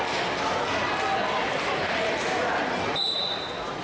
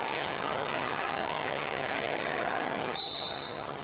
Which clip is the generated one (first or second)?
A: second